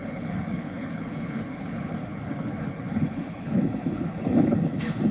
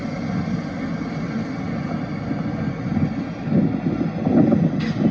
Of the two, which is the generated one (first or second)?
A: first